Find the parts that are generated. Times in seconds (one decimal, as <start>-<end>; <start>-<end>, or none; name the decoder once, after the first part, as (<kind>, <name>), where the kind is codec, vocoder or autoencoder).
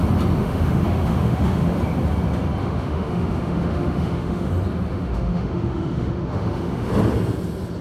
0.4-1.8 (autoencoder, DAC-VAE); 2.6-4.5; 4.9-6.9